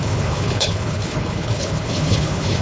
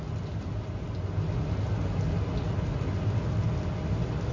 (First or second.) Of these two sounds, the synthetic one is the first